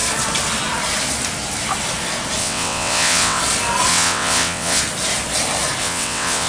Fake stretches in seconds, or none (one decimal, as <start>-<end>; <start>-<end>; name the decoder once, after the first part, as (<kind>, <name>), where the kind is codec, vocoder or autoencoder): 2.4-3.4 (vocoder, WaveNeXt); 3.9-4.8; 5.8-6.5